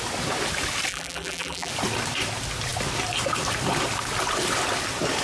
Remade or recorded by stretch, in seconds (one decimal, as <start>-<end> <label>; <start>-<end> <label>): 0.0-0.9 recorded; 0.9-1.7 remade; 1.7-5.2 recorded